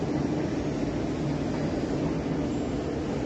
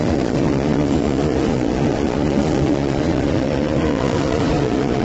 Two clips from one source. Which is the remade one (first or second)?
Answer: second